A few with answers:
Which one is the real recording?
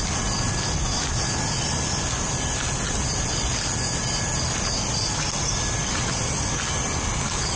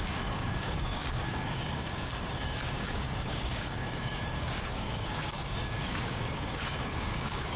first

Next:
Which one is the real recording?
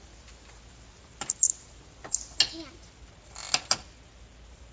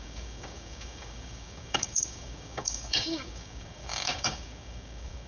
first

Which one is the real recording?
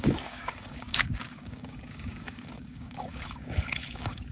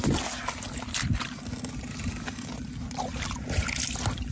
second